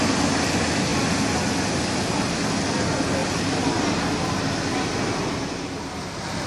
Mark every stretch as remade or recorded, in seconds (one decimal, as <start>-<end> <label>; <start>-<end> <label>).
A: 0.0-6.5 recorded